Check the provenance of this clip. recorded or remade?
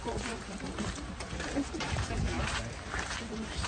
remade